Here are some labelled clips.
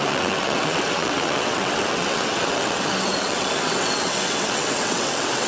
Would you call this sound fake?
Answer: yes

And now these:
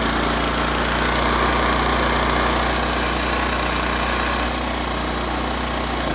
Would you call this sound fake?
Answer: no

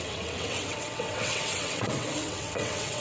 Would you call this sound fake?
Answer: yes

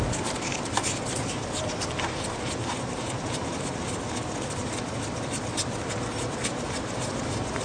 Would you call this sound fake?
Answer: no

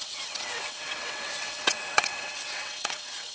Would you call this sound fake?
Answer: yes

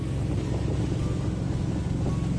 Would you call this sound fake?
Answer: no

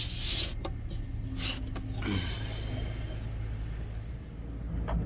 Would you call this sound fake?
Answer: no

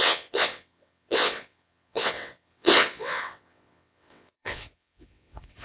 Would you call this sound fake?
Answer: yes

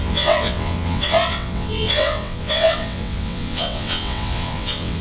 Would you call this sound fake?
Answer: yes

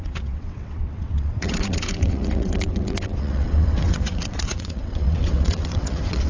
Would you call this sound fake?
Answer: yes